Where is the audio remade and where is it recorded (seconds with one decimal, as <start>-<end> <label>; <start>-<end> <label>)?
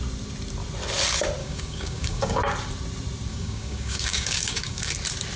0.0-1.4 recorded; 1.4-2.4 remade; 2.4-3.3 recorded; 3.3-4.9 remade; 4.9-5.4 recorded